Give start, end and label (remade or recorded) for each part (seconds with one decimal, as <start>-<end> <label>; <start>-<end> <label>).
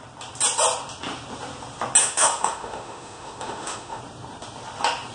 0.0-2.0 recorded; 2.0-4.0 remade; 4.0-5.1 recorded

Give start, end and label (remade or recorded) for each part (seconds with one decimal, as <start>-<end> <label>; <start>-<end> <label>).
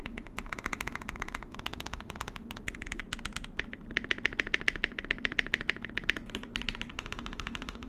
0.0-3.0 remade; 3.0-6.9 recorded; 6.9-7.9 remade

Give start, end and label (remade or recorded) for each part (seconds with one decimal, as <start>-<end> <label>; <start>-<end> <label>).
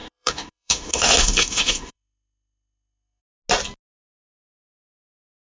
0.0-3.2 remade; 3.2-5.4 recorded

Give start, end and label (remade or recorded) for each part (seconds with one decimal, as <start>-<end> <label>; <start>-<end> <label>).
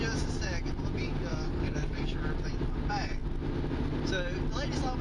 0.0-1.3 recorded; 1.3-2.2 remade; 2.2-5.0 recorded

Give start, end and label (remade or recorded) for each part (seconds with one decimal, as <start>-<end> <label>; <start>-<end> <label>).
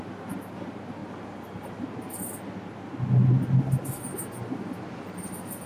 0.0-1.0 remade; 1.0-4.4 recorded; 4.4-5.7 remade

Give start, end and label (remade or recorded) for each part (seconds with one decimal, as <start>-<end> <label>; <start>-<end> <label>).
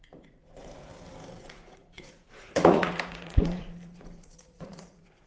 0.0-0.9 remade; 0.9-1.4 recorded; 1.4-5.3 remade